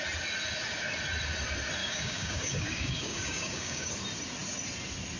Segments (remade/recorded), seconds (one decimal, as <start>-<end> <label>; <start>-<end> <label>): 0.0-1.8 recorded; 1.8-3.9 remade; 3.9-5.2 recorded